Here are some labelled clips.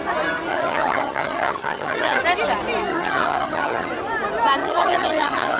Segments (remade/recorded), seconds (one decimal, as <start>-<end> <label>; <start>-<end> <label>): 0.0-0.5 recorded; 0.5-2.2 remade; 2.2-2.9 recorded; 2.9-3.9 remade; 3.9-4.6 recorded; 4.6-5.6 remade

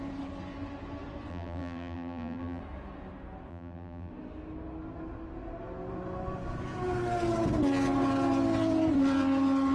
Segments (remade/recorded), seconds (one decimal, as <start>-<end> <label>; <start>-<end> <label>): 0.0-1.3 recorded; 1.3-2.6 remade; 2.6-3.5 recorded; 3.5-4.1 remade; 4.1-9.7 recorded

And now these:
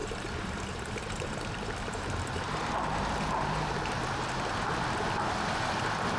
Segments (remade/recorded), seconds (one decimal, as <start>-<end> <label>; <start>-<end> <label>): 0.0-3.7 remade; 3.7-6.2 recorded